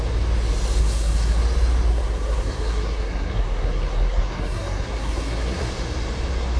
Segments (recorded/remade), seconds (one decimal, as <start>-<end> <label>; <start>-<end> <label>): 0.0-0.8 recorded; 0.8-1.4 remade; 1.4-1.9 recorded; 1.9-5.7 remade; 5.7-6.6 recorded